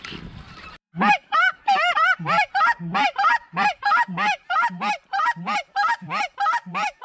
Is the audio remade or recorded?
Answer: remade